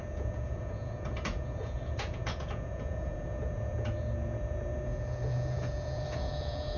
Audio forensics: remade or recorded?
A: remade